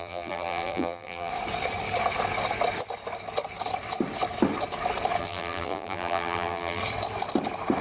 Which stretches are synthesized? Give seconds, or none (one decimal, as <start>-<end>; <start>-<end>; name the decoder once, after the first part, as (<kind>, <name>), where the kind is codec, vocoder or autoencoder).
0.0-1.3 (vocoder, BigVGAN v2); 5.2-6.8